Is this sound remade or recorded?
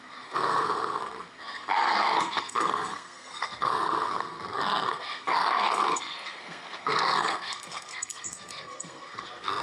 remade